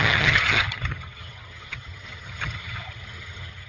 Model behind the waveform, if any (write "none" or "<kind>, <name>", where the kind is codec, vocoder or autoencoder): vocoder, HiFi-GAN